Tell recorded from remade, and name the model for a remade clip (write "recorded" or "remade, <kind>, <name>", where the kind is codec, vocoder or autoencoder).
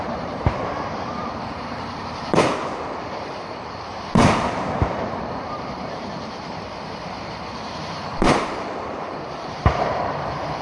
remade, vocoder, BigVGAN v2